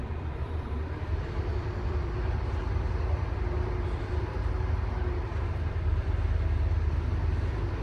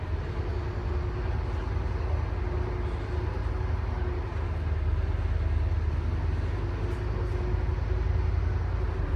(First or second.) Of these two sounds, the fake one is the first